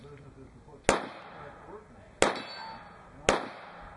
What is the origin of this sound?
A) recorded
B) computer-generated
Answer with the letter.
A